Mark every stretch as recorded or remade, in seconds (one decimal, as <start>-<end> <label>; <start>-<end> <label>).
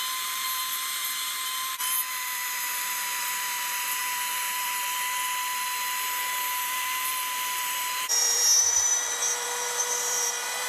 0.0-10.7 remade